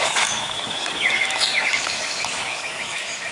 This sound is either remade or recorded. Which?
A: remade